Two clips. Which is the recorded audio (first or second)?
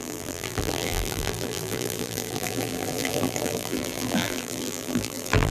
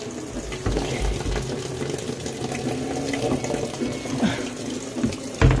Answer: second